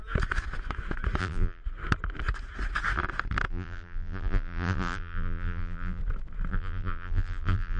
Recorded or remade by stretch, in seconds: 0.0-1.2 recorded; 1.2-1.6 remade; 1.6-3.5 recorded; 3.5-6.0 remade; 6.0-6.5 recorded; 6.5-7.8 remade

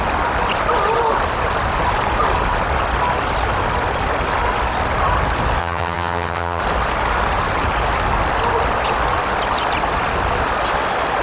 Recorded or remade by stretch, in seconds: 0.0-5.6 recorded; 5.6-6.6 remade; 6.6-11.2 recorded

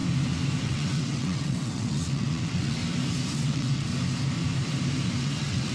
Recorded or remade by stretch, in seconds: 0.0-0.6 recorded; 0.6-2.8 remade; 2.8-3.3 recorded; 3.3-3.9 remade; 3.9-5.2 recorded; 5.2-5.7 remade

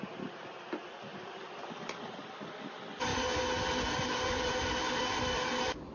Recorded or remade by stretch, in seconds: 0.0-1.1 recorded; 1.1-2.3 remade; 2.3-3.1 recorded; 3.1-5.9 remade

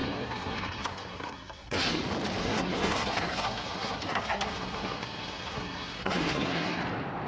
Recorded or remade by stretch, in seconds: 0.0-2.0 remade; 2.0-2.4 recorded; 2.4-6.8 remade; 6.8-7.3 recorded